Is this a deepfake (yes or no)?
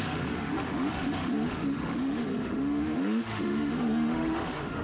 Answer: yes